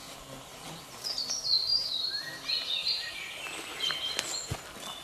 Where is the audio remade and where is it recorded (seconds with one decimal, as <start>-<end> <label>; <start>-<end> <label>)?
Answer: 0.0-1.7 recorded; 1.7-2.2 remade; 2.2-2.8 recorded; 2.8-3.4 remade; 3.4-5.0 recorded